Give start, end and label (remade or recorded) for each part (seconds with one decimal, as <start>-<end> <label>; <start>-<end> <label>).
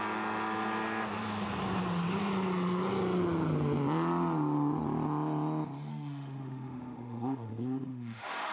0.0-5.9 recorded; 5.9-8.5 remade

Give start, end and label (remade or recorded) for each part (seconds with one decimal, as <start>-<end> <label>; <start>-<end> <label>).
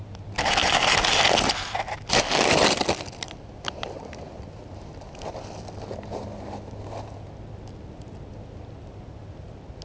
0.0-9.8 recorded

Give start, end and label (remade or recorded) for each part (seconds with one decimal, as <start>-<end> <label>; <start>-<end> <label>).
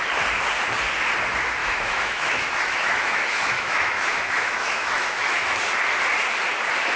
0.0-1.6 recorded; 1.6-5.5 remade; 5.5-7.0 recorded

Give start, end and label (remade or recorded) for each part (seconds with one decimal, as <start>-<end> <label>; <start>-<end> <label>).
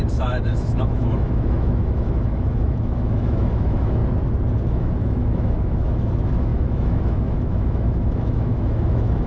0.0-4.0 remade; 4.0-4.7 recorded; 4.7-9.3 remade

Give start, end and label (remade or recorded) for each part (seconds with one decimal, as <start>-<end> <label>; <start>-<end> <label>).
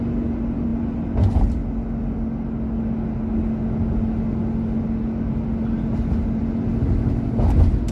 0.0-7.9 recorded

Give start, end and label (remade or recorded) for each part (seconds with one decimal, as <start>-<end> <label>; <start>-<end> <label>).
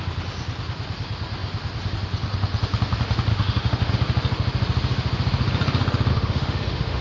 0.0-3.3 recorded; 3.3-3.9 remade; 3.9-6.1 recorded; 6.1-7.0 remade